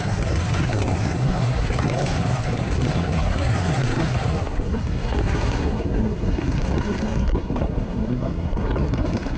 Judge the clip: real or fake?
fake